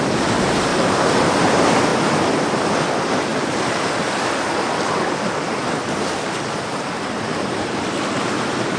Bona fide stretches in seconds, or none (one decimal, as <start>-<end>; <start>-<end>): 0.0-0.7; 1.3-3.3; 3.9-7.3; 7.9-8.8